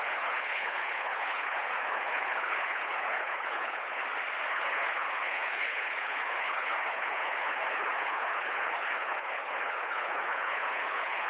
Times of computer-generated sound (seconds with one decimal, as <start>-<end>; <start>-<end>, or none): 0.0-4.0; 4.5-11.3